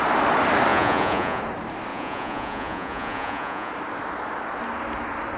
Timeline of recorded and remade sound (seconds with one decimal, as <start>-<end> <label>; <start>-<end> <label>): 0.0-0.7 recorded; 0.7-1.4 remade; 1.4-1.9 recorded; 1.9-3.7 remade; 3.7-5.4 recorded